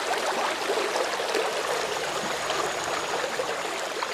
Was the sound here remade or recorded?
recorded